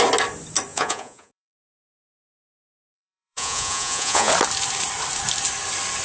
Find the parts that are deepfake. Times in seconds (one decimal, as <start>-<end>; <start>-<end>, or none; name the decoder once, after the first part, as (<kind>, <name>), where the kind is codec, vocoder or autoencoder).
0.7-4.3 (vocoder, Vocos)